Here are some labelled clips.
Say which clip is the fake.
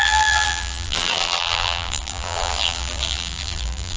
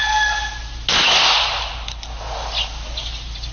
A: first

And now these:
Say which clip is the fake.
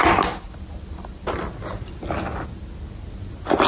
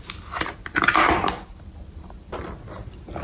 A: second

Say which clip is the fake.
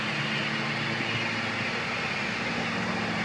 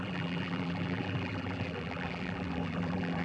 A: second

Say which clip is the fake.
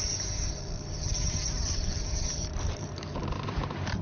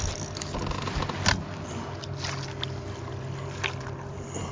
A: first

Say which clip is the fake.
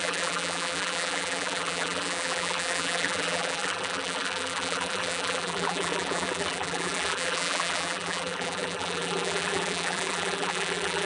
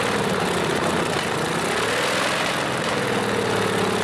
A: first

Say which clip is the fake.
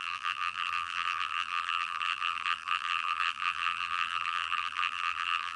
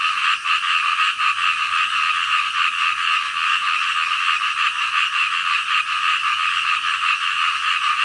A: first